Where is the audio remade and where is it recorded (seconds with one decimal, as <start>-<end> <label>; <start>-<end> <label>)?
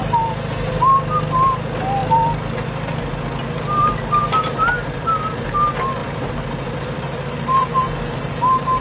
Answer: 0.0-6.0 recorded; 6.0-8.8 remade